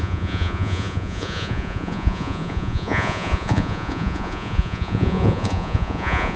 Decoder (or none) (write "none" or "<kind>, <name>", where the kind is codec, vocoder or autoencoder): vocoder, Vocos